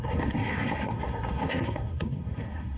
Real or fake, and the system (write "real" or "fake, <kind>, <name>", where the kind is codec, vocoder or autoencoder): fake, codec, SNAC